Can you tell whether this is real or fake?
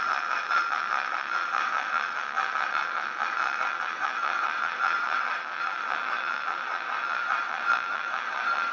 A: fake